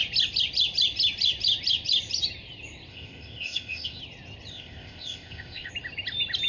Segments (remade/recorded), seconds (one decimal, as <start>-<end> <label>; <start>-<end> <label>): 0.0-2.9 recorded; 2.9-4.0 remade; 4.0-4.5 recorded; 4.5-5.7 remade; 5.7-6.5 recorded